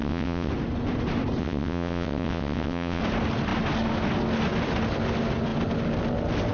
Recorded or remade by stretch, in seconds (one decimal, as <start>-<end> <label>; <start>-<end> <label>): 0.0-0.5 remade; 0.5-1.4 recorded; 1.4-3.0 remade; 3.0-6.5 recorded